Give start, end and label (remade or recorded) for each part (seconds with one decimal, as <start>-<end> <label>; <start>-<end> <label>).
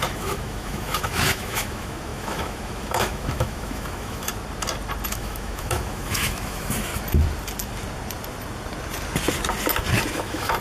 0.0-4.3 remade; 4.3-5.1 recorded; 5.1-6.9 remade; 6.9-10.1 recorded; 10.1-10.6 remade